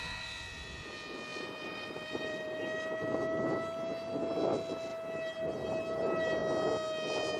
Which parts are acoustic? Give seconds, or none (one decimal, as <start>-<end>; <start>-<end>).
0.0-1.3; 2.6-7.4